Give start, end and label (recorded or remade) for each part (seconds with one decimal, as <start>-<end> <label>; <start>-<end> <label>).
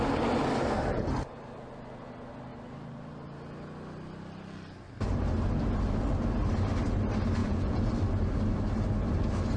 0.0-7.4 recorded; 7.4-7.9 remade; 7.9-9.6 recorded